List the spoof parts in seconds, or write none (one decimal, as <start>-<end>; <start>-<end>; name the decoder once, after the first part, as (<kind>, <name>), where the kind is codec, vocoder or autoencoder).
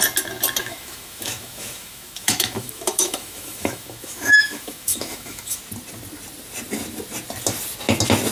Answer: 0.6-5.6 (autoencoder, DAC-VAE)